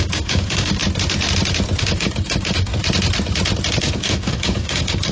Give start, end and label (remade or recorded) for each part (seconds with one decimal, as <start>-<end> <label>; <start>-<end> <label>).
0.0-0.8 remade; 0.8-1.8 recorded; 1.8-2.7 remade; 2.7-3.8 recorded; 3.8-5.1 remade